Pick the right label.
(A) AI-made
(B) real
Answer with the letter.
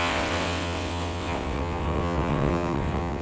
A